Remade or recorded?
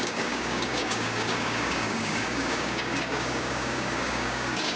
remade